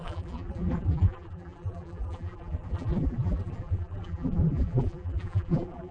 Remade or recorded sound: remade